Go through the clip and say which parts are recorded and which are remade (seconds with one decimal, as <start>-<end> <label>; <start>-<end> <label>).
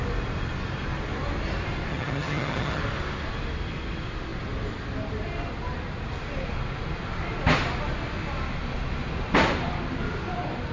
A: 0.0-1.9 recorded; 1.9-2.8 remade; 2.8-10.7 recorded